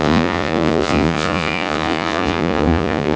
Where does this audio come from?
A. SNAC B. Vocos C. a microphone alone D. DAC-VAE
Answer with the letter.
B